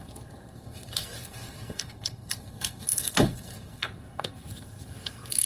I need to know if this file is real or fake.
fake